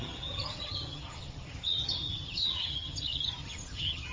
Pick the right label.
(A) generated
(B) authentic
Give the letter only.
A